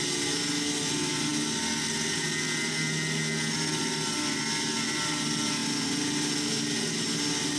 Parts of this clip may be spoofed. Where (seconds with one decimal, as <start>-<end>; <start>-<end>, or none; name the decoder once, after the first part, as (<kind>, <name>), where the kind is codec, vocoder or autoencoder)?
none

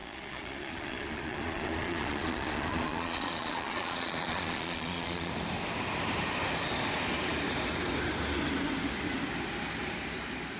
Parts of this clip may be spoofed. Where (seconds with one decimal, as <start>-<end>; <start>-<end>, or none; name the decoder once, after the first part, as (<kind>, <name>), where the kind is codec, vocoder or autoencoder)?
0.0-5.3 (vocoder, Vocos)

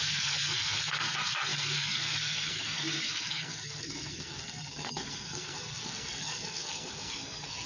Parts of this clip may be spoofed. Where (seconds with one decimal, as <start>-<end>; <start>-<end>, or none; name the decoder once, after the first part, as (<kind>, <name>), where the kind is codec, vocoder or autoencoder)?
0.0-7.7 (codec, SNAC)

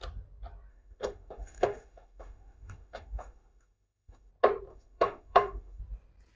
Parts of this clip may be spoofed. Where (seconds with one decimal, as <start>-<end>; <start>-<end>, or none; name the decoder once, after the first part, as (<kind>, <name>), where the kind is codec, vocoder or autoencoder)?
0.7-4.3 (autoencoder, DAC-VAE); 4.7-5.8

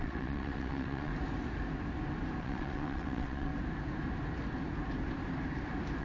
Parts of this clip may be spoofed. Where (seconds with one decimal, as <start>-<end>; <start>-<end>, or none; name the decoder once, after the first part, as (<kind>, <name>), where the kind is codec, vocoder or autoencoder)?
0.0-1.1 (vocoder, WaveNeXt); 2.4-3.5

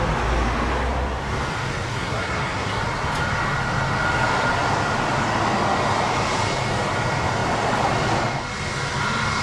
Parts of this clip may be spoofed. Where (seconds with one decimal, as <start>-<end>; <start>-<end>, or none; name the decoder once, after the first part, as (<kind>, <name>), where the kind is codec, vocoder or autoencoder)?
1.9-2.8 (codec, SNAC)

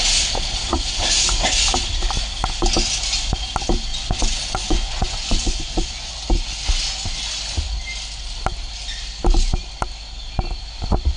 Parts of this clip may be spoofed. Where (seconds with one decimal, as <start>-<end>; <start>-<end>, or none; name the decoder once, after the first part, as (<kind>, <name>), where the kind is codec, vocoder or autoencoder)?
3.9-6.1 (vocoder, Vocos)

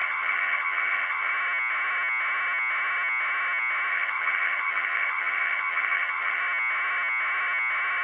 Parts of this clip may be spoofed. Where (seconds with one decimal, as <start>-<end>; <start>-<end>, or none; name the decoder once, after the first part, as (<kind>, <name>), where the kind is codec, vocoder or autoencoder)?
0.0-1.3 (vocoder, HiFi-GAN); 3.9-6.4